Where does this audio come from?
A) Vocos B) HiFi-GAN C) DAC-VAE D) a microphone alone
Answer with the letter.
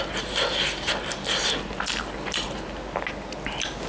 D